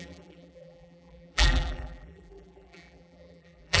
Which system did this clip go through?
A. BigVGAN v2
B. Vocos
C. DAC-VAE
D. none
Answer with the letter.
A